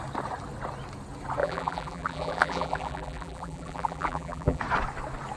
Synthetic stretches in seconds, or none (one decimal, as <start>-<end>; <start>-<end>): 1.4-4.6